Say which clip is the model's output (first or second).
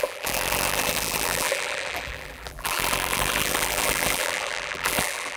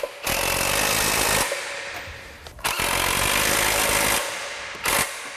first